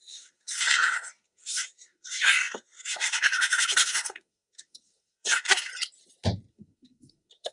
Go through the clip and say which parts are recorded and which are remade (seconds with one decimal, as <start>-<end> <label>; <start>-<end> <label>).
0.0-5.7 remade; 5.7-6.5 recorded; 6.5-7.5 remade